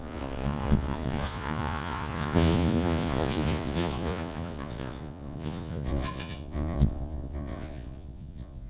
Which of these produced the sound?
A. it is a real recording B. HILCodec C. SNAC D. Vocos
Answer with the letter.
D